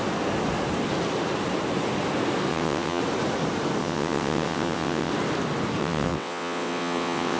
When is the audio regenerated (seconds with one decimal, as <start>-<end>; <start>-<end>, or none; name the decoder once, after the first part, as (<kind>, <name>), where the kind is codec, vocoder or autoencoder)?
2.5-3.0 (vocoder, WaveNeXt); 3.8-5.1; 5.8-7.4